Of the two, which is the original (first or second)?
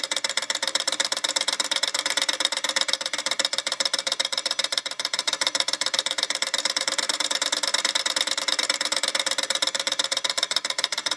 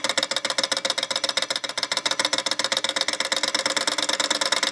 second